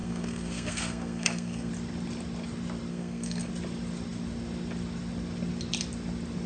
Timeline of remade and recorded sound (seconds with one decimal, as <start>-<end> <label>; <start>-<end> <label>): 0.0-1.7 remade; 1.7-2.9 recorded; 2.9-3.5 remade; 3.5-6.5 recorded